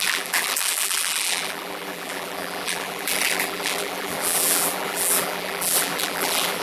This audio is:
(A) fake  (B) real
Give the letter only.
A